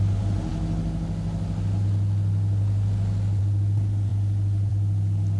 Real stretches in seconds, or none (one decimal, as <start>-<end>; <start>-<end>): 0.0-5.4